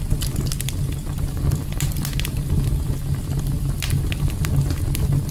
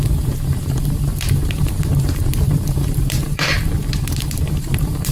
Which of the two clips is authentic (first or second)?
first